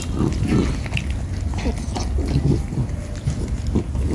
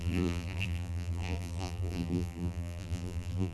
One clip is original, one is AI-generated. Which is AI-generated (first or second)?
second